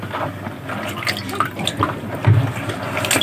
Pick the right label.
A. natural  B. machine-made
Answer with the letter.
A